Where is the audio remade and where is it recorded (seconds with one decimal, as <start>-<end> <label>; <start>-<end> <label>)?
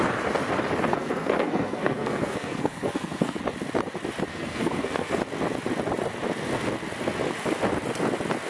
0.0-0.9 recorded; 0.9-3.4 remade; 3.4-4.3 recorded; 4.3-5.2 remade; 5.2-8.5 recorded